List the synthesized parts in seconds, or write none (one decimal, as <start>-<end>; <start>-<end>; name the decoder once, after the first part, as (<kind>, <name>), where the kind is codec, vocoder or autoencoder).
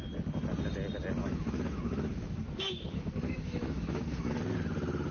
1.2-4.3 (autoencoder, DAC-VAE)